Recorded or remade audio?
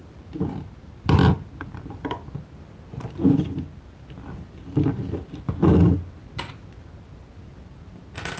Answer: recorded